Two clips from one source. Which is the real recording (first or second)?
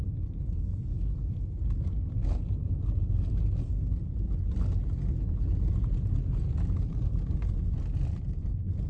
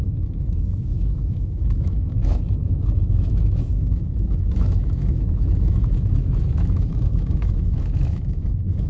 first